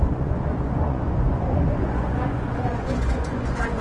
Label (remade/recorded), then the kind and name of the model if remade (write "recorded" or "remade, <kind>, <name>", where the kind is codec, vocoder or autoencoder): remade, vocoder, Vocos